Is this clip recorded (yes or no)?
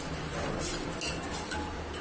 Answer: yes